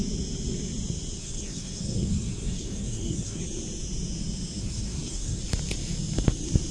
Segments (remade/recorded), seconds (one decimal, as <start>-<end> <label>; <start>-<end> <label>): 0.0-1.2 recorded; 1.2-3.4 remade; 3.4-4.6 recorded; 4.6-5.4 remade; 5.4-6.7 recorded